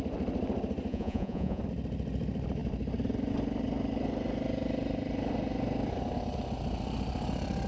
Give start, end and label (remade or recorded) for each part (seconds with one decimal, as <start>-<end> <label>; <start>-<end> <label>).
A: 0.0-0.9 recorded; 0.9-1.6 remade; 1.6-7.7 recorded